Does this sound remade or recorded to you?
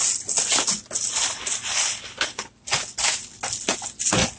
recorded